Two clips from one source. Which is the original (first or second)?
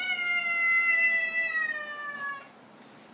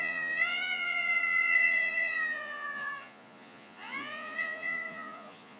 first